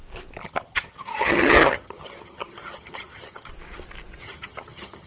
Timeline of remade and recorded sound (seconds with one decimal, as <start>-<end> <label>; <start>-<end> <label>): 0.0-0.4 recorded; 0.4-3.5 remade; 3.5-4.2 recorded; 4.2-5.1 remade